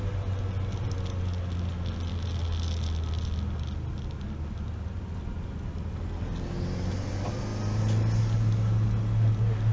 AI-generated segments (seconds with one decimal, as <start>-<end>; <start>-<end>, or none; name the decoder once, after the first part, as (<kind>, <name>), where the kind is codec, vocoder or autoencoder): none